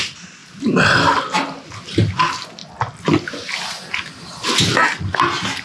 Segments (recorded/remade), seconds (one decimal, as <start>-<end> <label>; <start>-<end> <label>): 0.0-5.6 recorded